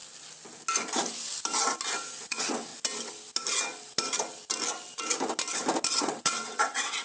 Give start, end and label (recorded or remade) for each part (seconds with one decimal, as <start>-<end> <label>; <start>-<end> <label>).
0.0-2.2 recorded; 2.2-2.7 remade; 2.7-6.0 recorded; 6.0-7.0 remade